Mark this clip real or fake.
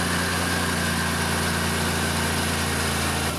real